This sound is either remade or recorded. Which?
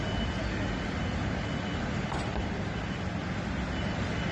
recorded